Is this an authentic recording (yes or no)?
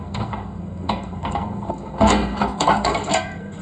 no